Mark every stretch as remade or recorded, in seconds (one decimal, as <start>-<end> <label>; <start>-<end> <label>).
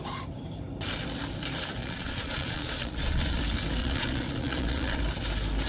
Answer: 0.0-1.8 recorded; 1.8-3.4 remade; 3.4-3.8 recorded; 3.8-5.0 remade; 5.0-5.7 recorded